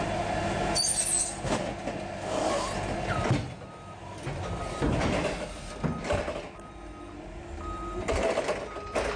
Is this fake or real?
real